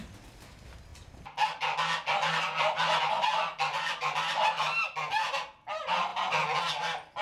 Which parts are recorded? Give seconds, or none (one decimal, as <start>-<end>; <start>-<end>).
0.0-7.2